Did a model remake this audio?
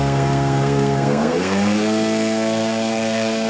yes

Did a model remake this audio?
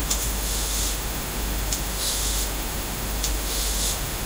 yes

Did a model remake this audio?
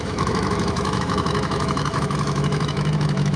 yes